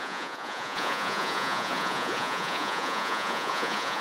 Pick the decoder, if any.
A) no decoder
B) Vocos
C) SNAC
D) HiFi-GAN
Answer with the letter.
B